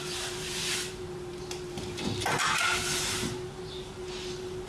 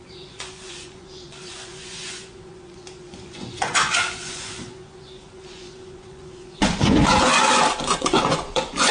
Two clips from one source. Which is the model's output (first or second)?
second